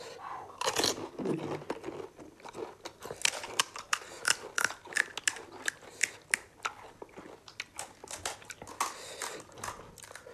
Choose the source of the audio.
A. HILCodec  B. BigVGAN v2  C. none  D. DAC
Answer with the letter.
C